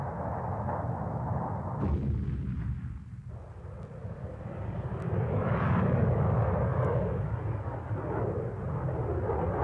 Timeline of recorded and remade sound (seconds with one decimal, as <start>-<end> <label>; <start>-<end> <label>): 0.0-4.0 recorded; 4.0-7.9 remade; 7.9-9.6 recorded